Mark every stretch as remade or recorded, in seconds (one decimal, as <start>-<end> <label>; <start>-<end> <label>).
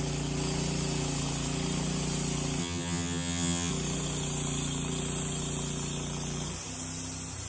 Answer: 0.0-2.6 recorded; 2.6-3.7 remade; 3.7-7.5 recorded